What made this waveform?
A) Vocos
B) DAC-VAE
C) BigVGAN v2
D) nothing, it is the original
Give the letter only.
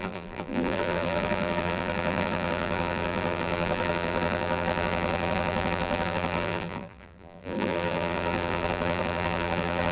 C